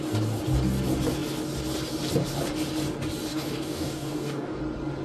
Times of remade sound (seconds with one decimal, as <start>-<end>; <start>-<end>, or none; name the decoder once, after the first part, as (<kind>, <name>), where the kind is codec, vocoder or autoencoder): 3.3-4.6 (codec, DAC)

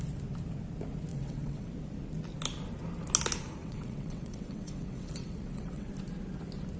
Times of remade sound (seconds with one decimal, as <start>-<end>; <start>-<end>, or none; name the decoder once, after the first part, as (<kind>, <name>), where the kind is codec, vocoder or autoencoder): 1.1-1.7 (vocoder, WaveNeXt); 3.6-5.9

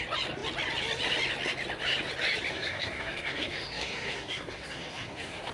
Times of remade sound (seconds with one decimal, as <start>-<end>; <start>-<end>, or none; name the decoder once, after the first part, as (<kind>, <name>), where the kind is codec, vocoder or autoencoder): 2.5-5.5 (codec, SNAC)

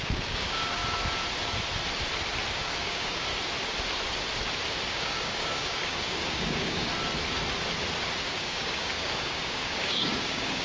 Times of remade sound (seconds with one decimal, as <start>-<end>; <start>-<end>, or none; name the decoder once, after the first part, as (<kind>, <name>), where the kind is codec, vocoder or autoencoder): 0.0-0.8 (codec, DAC); 2.5-3.3; 4.9-6.9; 8.3-10.6

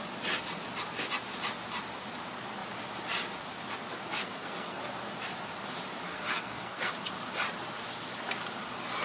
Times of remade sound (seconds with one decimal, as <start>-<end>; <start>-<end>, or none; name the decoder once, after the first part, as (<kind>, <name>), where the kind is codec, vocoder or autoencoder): 4.2-4.8 (codec, SNAC); 6.1-6.9

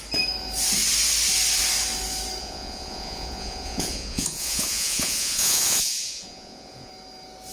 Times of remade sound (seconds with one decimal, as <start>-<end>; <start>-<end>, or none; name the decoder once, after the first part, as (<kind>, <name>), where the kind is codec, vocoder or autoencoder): 2.4-6.9 (vocoder, Vocos)

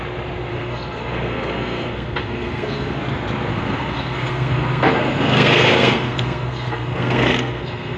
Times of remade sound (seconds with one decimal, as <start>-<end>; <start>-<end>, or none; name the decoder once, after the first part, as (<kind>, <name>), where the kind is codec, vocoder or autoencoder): 0.5-3.0 (codec, SNAC); 3.5-8.0